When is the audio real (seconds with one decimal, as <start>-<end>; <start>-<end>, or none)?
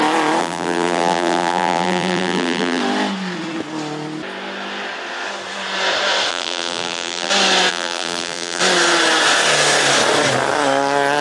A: 0.0-0.4; 2.8-6.3; 7.3-7.7; 8.6-11.2